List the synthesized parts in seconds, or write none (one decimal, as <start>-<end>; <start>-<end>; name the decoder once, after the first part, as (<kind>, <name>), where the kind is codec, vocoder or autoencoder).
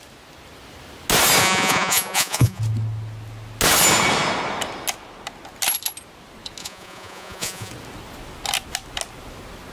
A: 1.4-2.6 (vocoder, Vocos); 6.6-7.7